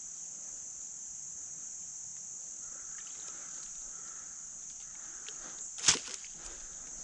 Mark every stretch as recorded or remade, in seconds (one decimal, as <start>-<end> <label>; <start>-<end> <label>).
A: 0.0-7.0 recorded